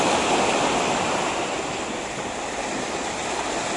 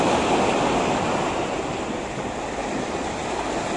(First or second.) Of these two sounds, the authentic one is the second